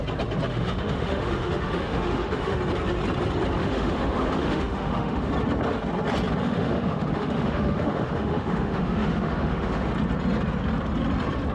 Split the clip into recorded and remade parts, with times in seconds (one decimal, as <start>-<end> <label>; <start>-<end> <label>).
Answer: 0.0-0.5 recorded; 0.5-2.6 remade; 2.6-3.6 recorded; 3.6-5.3 remade; 5.3-6.4 recorded; 6.4-9.9 remade; 9.9-11.5 recorded